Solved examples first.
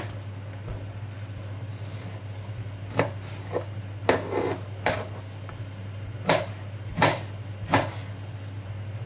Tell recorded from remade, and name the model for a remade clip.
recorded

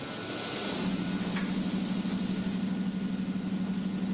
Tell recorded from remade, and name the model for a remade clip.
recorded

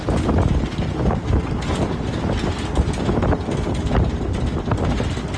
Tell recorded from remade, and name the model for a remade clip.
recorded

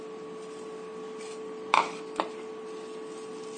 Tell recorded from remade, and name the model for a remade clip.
recorded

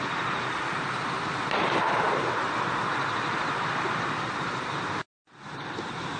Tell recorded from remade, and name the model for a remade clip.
recorded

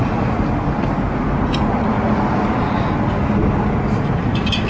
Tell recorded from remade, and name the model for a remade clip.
recorded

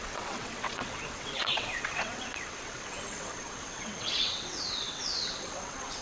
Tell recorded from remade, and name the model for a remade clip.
remade, vocoder, WaveNeXt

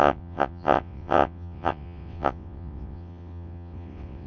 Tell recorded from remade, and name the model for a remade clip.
remade, vocoder, WaveNeXt